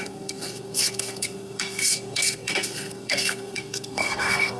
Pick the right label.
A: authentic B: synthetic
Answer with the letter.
B